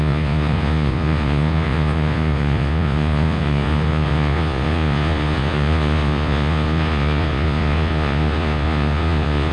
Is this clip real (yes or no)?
no